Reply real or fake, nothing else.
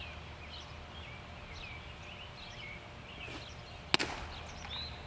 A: real